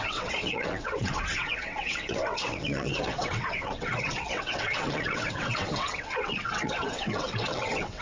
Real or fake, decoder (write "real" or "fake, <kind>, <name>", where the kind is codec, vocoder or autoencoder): fake, vocoder, WaveNeXt